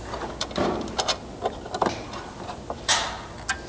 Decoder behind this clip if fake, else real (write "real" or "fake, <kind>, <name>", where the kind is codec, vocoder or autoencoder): real